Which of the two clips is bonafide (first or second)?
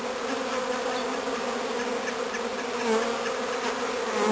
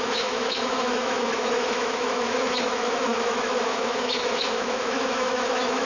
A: first